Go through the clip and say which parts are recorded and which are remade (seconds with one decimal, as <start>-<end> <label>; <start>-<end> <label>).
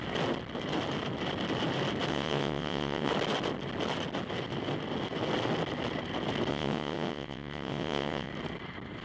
0.0-2.1 recorded; 2.1-3.1 remade; 3.1-6.5 recorded; 6.5-8.3 remade; 8.3-9.0 recorded